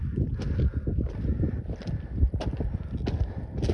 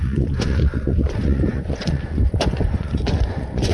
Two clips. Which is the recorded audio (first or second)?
first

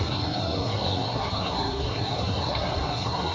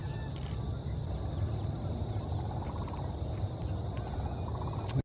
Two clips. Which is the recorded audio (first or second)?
second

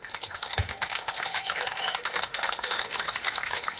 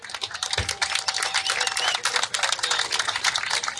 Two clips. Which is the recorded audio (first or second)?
second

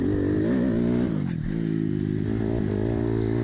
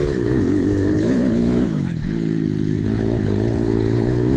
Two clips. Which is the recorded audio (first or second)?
first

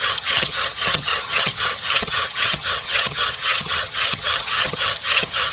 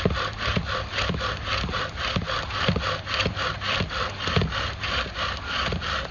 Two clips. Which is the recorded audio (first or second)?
second